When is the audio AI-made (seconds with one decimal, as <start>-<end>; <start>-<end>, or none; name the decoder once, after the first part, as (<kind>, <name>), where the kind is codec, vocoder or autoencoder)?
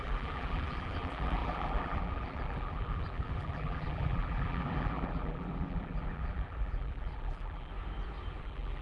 0.0-7.7 (vocoder, BigVGAN v2); 8.4-8.8